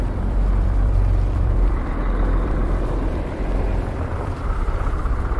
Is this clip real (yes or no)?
no